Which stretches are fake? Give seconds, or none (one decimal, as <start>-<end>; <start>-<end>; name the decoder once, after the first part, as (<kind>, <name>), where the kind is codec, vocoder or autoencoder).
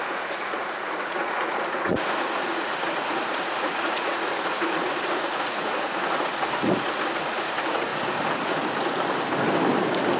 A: 0.0-7.9 (vocoder, Vocos)